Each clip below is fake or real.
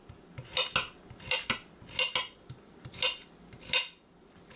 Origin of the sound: real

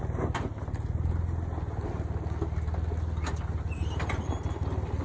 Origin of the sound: real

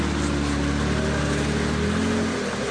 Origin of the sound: real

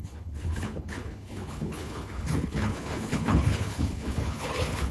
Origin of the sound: fake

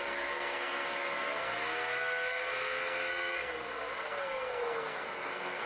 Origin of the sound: fake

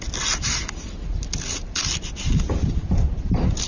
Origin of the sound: real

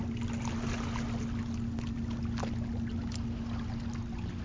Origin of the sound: real